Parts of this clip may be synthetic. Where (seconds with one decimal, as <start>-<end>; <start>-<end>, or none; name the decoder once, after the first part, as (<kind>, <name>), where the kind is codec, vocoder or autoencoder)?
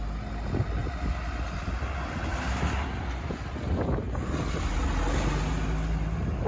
none